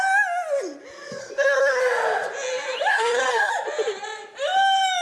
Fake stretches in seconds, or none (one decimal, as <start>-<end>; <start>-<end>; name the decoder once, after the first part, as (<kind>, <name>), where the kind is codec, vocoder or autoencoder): 1.2-1.8 (codec, SNAC); 2.9-3.5